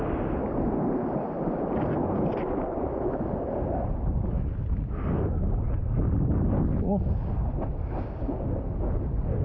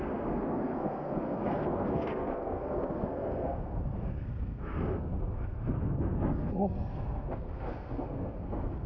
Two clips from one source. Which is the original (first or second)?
first